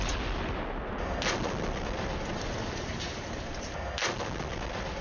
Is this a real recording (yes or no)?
yes